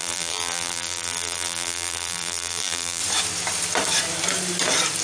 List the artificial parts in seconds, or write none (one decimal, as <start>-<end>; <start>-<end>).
0.0-3.0